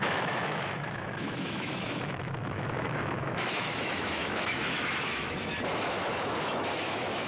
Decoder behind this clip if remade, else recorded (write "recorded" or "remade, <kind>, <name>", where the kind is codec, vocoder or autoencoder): remade, autoencoder, DAC-VAE